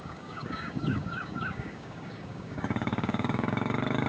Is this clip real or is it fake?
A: fake